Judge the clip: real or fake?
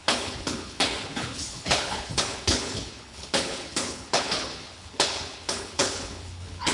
fake